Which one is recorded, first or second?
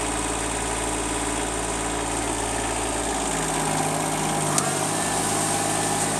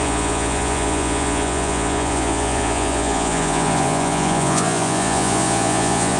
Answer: first